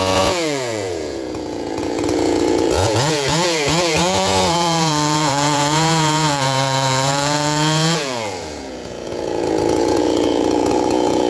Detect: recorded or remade remade